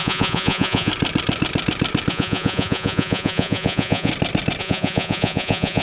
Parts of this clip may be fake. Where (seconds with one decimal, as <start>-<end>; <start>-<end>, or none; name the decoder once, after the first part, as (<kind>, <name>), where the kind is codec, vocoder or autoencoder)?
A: 0.0-0.9 (vocoder, Vocos); 2.1-4.1; 4.6-5.8